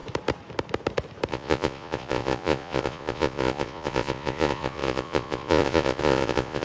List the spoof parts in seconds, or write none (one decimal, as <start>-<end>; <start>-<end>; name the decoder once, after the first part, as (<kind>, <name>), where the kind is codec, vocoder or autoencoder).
1.3-6.6 (vocoder, Vocos)